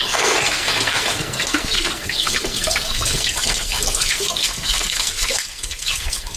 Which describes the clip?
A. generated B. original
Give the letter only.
A